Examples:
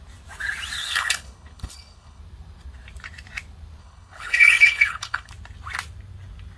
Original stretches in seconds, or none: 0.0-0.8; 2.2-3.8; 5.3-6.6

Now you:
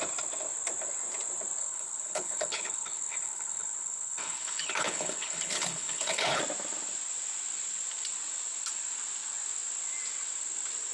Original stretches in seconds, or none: 0.0-1.6; 6.4-10.9

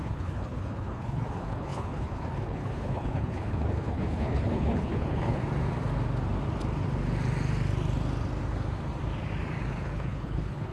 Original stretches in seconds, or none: 5.4-9.7

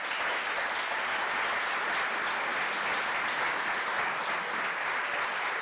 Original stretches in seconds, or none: 0.0-5.6

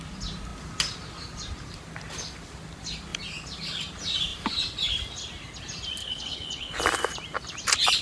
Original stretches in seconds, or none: 0.0-6.0; 6.8-8.0

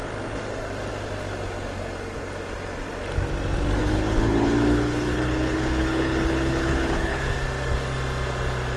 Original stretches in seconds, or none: 0.0-3.8; 7.3-8.8